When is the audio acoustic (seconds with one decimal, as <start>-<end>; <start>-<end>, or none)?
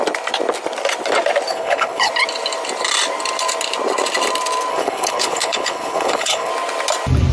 0.0-1.5; 2.1-4.7; 6.5-7.3